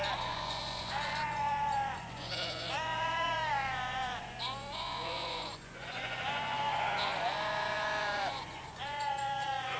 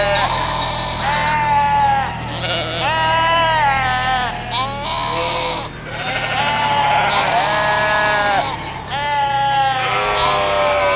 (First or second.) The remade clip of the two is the first